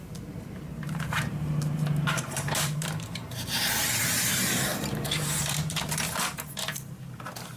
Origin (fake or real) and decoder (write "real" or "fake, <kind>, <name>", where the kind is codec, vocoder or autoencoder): fake, vocoder, BigVGAN v2